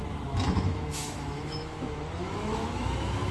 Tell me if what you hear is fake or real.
fake